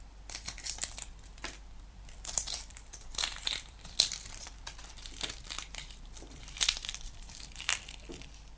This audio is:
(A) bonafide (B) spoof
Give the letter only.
B